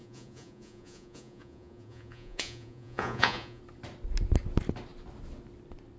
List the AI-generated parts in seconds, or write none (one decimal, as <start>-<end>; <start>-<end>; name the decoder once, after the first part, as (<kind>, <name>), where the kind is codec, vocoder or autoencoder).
0.0-3.6 (vocoder, Vocos)